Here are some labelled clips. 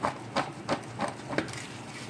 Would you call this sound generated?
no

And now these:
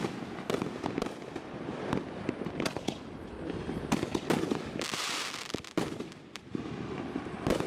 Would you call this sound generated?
yes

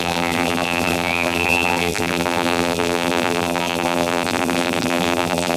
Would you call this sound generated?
yes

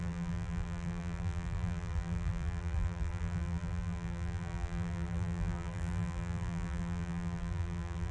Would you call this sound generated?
yes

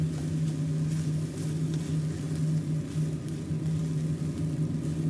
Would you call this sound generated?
no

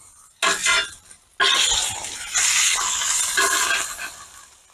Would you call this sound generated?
no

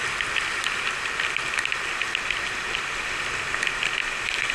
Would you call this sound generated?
no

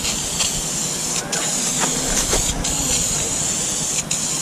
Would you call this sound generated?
no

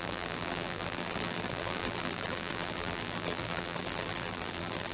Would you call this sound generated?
yes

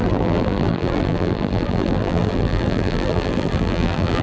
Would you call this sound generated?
yes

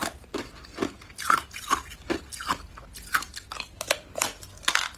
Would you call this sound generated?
no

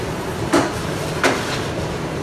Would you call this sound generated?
yes